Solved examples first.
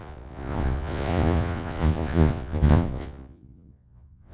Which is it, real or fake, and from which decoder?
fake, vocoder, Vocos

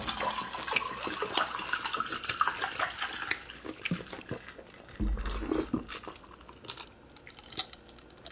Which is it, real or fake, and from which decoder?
real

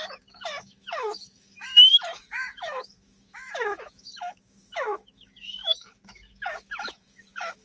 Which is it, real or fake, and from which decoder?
fake, autoencoder, DAC-VAE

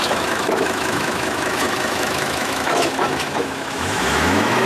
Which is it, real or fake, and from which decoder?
fake, autoencoder, DAC-VAE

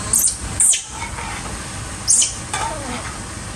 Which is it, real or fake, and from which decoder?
real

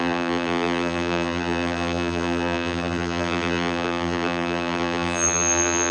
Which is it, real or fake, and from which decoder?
fake, vocoder, BigVGAN v2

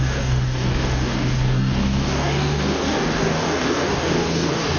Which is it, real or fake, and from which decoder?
fake, codec, DAC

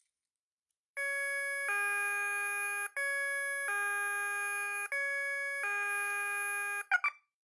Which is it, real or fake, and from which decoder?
real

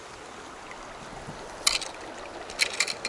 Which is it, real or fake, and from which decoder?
real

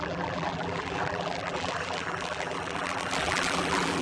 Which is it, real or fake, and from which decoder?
fake, vocoder, BigVGAN v2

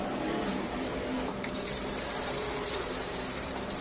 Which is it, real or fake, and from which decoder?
fake, vocoder, BigVGAN v2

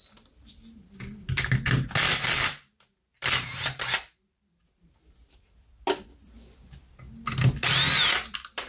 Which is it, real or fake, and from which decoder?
real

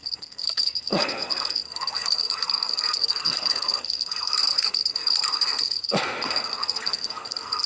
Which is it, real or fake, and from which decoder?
fake, codec, SNAC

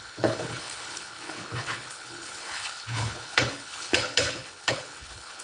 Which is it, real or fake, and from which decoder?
fake, codec, HILCodec